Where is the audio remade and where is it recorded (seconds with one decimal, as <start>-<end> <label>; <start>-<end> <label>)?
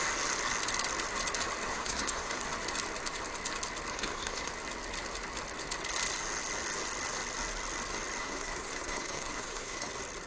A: 0.0-1.7 recorded; 1.7-2.4 remade; 2.4-3.9 recorded; 3.9-4.5 remade; 4.5-8.2 recorded; 8.2-9.9 remade; 9.9-10.3 recorded